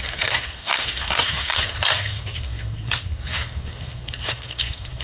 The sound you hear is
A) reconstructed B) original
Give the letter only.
A